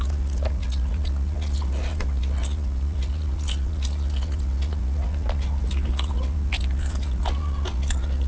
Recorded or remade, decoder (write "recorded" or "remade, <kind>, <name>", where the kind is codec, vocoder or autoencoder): remade, vocoder, Vocos